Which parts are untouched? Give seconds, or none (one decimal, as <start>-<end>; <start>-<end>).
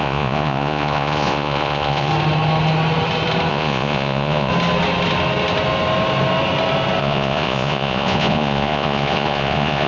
2.1-3.5; 4.5-7.0